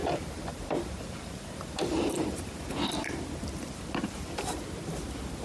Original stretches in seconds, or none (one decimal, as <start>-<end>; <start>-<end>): 3.2-5.4